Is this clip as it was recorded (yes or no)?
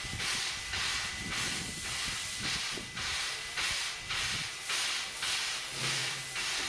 yes